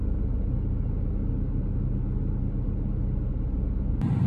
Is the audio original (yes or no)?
yes